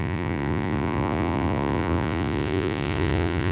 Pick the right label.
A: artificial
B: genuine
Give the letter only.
A